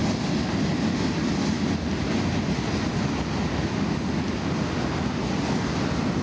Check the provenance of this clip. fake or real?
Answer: real